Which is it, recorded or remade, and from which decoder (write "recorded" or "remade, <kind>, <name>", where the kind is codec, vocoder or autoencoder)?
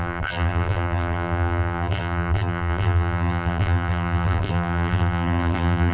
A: remade, vocoder, BigVGAN v2